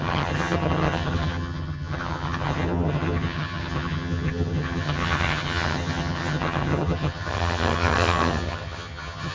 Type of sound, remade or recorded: remade